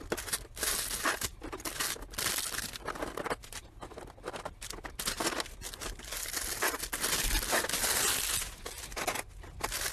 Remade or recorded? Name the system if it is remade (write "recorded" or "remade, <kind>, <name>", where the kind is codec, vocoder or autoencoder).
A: recorded